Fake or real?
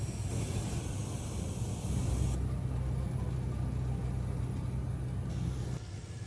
real